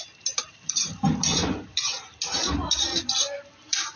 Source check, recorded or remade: remade